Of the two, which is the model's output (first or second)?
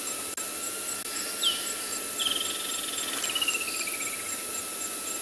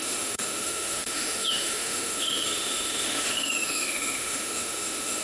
second